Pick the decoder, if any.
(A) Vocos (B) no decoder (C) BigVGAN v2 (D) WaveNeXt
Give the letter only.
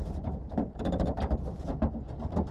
B